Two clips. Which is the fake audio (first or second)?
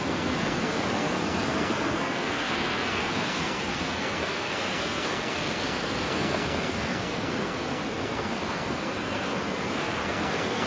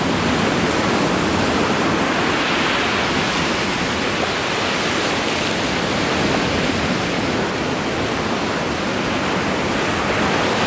first